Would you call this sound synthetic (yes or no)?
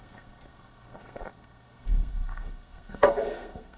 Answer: yes